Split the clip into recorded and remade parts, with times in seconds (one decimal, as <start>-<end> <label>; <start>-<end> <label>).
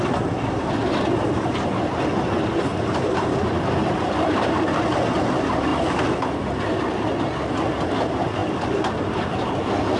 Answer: 0.0-1.1 recorded; 1.1-1.7 remade; 1.7-2.7 recorded; 2.7-4.8 remade; 4.8-10.0 recorded